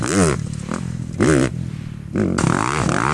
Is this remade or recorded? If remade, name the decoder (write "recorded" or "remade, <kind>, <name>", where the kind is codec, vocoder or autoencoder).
recorded